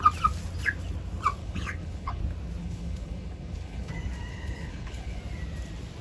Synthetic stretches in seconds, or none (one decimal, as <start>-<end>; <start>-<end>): 1.4-2.2; 2.6-3.9; 4.3-5.2